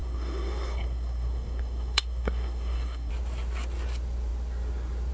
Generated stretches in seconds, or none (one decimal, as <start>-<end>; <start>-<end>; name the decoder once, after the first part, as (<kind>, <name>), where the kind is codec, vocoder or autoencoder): 0.0-3.1 (codec, SNAC)